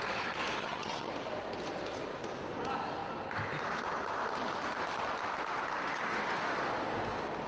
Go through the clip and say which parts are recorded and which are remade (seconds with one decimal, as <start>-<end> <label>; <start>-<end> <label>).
0.0-0.6 recorded; 0.6-1.1 remade; 1.1-7.5 recorded